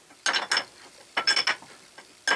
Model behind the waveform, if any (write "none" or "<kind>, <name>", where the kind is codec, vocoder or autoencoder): none